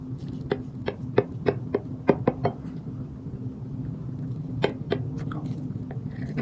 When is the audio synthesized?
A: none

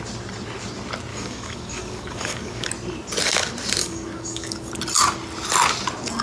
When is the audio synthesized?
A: 1.1-2.7 (codec, DAC); 3.8-4.7

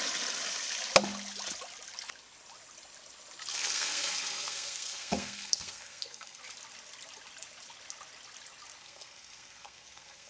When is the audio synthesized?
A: 3.5-6.4 (codec, SNAC); 8.8-10.3

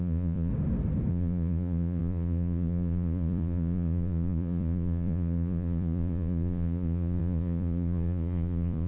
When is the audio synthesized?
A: 0.0-0.5 (vocoder, Vocos); 1.1-8.9

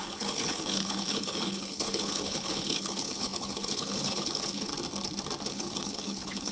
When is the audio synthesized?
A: 0.0-4.7 (codec, HILCodec); 5.5-6.5

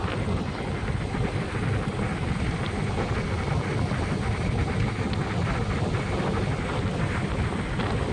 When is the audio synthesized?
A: none